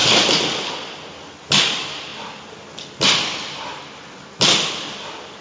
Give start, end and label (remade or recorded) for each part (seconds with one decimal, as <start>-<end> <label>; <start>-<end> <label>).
0.0-5.4 recorded